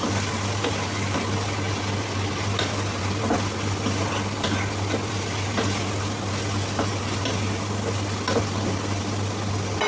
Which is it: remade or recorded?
recorded